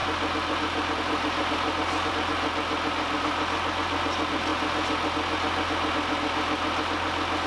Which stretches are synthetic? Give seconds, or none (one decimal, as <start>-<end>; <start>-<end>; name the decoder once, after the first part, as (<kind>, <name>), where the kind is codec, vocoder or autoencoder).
none

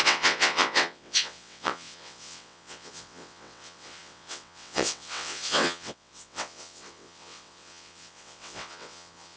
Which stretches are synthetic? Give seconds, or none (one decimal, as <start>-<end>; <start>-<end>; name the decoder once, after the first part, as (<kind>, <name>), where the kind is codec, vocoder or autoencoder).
0.0-9.4 (vocoder, WaveNeXt)